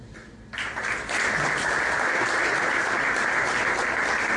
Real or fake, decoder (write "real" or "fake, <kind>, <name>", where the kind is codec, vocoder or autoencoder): real